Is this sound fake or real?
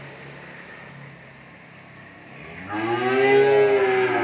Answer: real